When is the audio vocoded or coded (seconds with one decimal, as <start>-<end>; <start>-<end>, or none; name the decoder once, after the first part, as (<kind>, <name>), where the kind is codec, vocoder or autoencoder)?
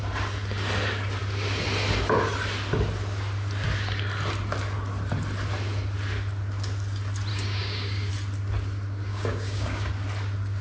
7.3-8.1 (codec, DAC); 9.1-9.9